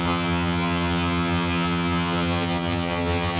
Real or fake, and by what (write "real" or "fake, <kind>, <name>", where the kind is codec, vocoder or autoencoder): fake, vocoder, HiFi-GAN